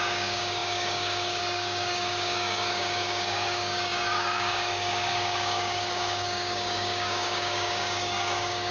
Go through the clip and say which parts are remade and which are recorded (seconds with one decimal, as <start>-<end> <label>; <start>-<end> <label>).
0.0-8.7 remade